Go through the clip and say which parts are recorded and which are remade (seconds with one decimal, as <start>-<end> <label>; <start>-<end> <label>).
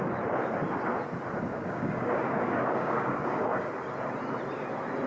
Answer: 0.0-1.5 recorded; 1.5-3.7 remade; 3.7-5.1 recorded